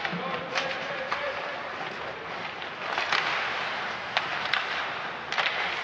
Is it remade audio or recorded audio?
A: recorded